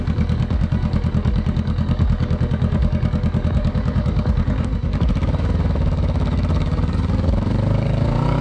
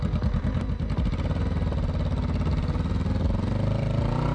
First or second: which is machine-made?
first